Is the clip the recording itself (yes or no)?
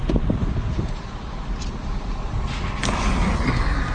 yes